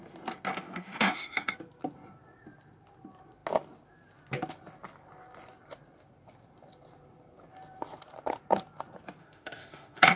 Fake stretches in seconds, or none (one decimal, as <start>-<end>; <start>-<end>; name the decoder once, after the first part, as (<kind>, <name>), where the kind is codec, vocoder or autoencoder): 0.5-1.5 (autoencoder, DAC-VAE); 9.2-10.2